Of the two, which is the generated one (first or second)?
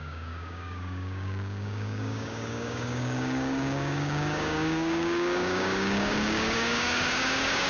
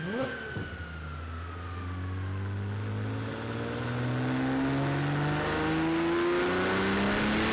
first